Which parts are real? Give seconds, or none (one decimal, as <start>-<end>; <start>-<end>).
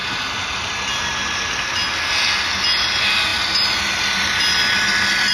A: 0.0-5.3